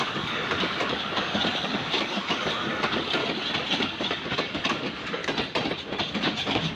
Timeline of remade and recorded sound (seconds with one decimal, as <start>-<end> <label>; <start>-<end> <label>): 0.0-3.2 remade; 3.2-3.8 recorded; 3.8-5.2 remade; 5.2-6.1 recorded; 6.1-6.7 remade